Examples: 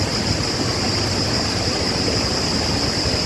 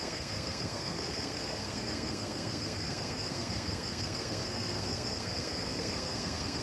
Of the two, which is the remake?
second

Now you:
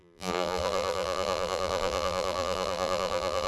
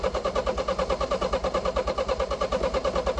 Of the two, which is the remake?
first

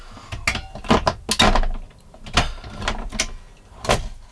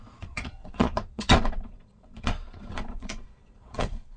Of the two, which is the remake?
second